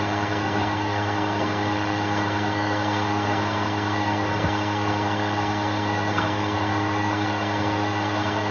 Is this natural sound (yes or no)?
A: no